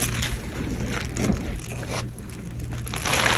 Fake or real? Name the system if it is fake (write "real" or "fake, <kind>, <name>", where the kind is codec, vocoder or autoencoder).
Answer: real